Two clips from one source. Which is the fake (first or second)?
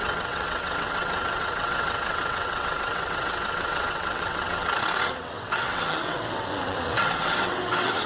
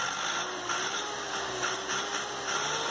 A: first